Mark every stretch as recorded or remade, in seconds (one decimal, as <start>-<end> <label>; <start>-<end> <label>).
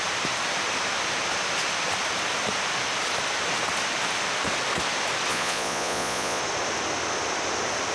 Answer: 0.0-5.3 recorded; 5.3-6.4 remade; 6.4-7.9 recorded